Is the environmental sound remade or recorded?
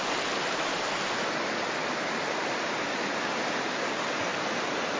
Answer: recorded